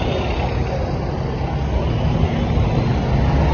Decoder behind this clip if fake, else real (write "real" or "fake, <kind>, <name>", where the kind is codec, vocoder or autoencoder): real